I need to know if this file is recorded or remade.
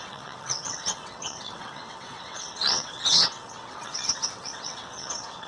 remade